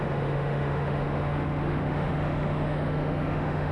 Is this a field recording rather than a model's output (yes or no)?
no